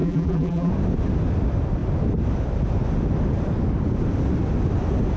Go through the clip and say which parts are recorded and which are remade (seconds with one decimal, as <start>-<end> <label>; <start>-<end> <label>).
0.0-0.7 remade; 0.7-5.2 recorded